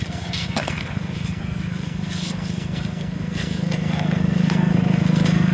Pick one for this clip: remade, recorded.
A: remade